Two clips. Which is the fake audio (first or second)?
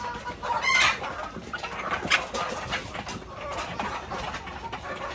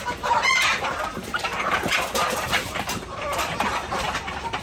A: second